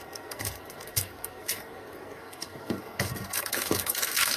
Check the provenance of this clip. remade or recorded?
remade